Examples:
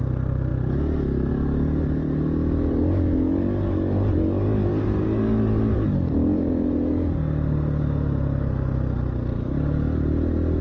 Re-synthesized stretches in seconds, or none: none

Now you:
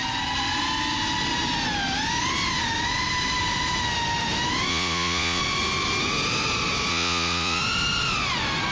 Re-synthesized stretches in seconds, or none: 4.7-5.4 (vocoder, Vocos); 6.9-7.6

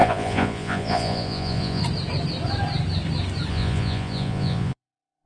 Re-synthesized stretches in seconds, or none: 0.0-1.8 (vocoder, Vocos); 3.5-5.3